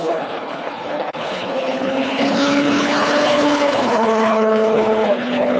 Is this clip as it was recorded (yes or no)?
no